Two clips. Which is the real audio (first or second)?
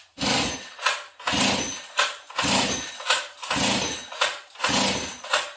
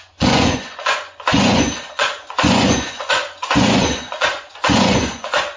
first